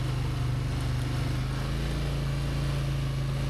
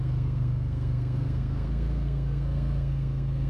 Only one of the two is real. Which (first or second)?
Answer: first